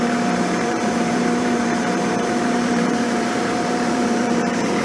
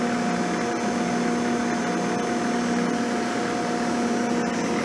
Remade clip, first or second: first